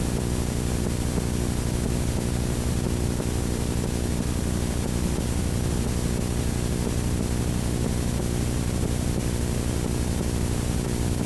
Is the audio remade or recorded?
recorded